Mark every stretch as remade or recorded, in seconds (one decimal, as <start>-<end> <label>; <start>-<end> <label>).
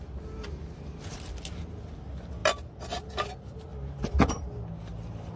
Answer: 0.0-3.7 recorded; 3.7-4.4 remade; 4.4-5.4 recorded